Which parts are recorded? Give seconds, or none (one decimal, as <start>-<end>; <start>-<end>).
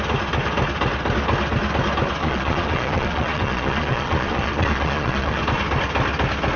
0.0-2.2; 5.4-6.6